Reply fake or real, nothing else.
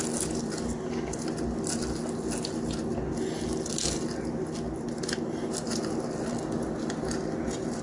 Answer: real